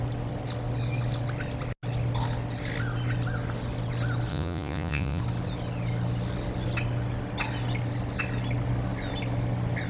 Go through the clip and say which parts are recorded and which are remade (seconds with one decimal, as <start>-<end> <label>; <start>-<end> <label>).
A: 0.0-4.3 recorded; 4.3-5.2 remade; 5.2-9.9 recorded